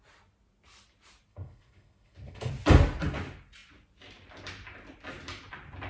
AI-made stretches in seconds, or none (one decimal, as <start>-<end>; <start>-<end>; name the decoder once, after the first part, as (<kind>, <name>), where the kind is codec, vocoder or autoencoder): 1.3-2.5 (codec, SNAC)